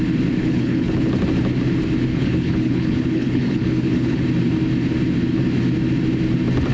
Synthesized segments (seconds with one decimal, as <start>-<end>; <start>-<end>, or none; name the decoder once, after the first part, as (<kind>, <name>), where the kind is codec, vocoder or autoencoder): 0.4-1.1 (codec, HILCodec); 2.1-4.2